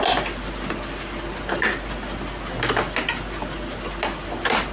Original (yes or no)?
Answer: yes